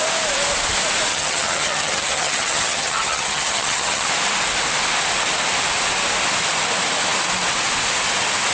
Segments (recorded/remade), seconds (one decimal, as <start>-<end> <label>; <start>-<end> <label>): 0.0-1.1 recorded; 1.1-4.1 remade; 4.1-8.5 recorded